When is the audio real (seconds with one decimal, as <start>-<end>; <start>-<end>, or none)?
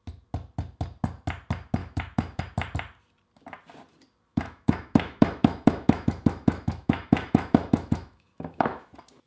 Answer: 0.0-1.8; 2.4-4.3; 8.9-9.3